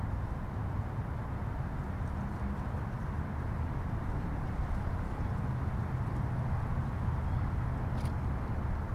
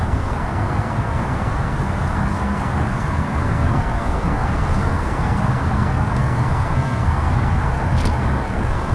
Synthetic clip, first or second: second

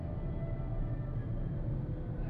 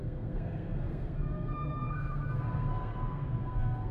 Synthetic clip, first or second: second